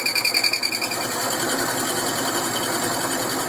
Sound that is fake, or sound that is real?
real